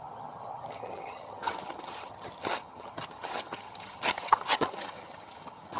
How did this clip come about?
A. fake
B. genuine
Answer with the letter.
A